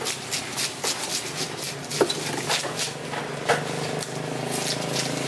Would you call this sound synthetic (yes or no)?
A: no